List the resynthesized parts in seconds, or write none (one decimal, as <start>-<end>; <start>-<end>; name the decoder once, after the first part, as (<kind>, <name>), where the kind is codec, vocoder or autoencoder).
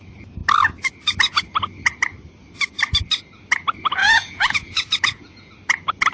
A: 4.0-5.5 (vocoder, Vocos)